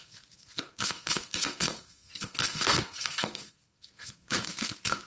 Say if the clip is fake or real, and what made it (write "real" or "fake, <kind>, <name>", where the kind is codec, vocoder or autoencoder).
fake, codec, SNAC